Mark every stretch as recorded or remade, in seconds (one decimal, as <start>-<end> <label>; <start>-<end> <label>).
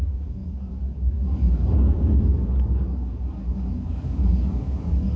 0.0-5.2 remade